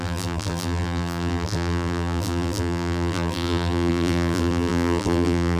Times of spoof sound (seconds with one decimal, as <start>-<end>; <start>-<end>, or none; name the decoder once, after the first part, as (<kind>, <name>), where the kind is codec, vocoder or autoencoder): 0.0-5.6 (vocoder, BigVGAN v2)